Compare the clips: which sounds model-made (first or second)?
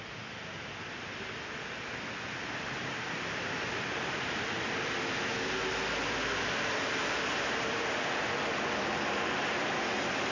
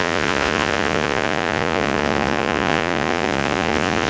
second